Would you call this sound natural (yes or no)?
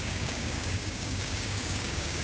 no